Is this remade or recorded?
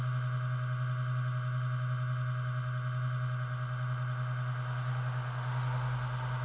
recorded